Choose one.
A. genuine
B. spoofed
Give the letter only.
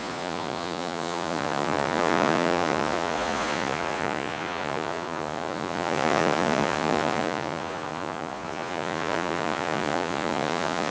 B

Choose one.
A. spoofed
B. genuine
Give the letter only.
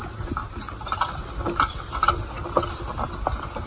B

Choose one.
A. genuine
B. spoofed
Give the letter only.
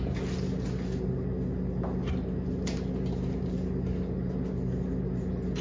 A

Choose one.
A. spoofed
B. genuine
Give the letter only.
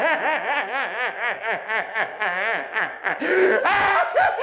A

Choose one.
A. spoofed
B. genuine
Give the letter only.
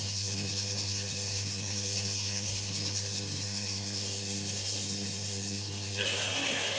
A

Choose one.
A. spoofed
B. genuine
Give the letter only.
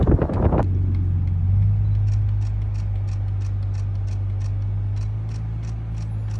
B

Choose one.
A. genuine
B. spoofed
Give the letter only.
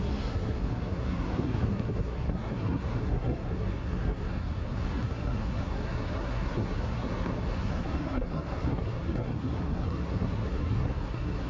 B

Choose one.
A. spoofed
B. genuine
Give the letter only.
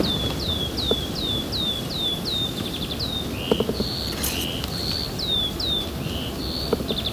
B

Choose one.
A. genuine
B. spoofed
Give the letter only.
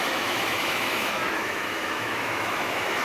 B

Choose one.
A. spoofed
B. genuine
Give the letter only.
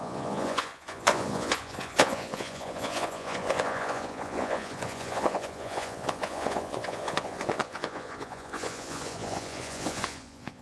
A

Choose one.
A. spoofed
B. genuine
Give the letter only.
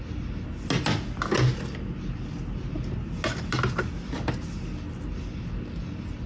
B